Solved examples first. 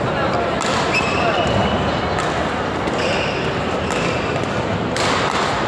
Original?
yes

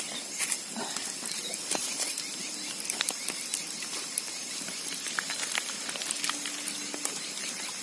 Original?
yes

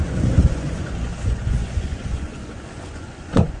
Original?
no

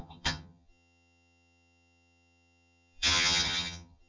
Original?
no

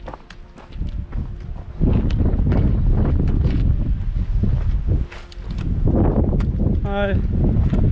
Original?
yes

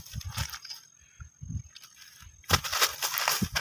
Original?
yes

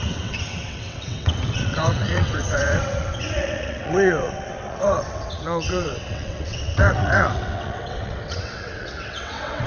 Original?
no